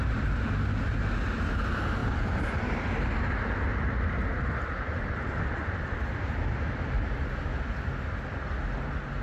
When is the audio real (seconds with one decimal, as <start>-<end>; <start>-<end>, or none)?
0.0-2.0; 2.6-9.2